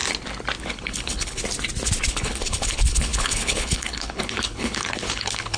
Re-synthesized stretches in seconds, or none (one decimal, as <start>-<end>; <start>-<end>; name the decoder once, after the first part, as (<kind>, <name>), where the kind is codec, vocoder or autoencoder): 0.6-1.4 (codec, HILCodec); 2.1-5.6